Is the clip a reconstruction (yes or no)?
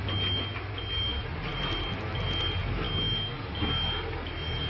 no